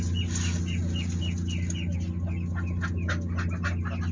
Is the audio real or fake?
real